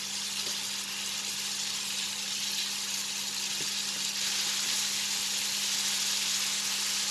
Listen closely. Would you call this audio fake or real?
real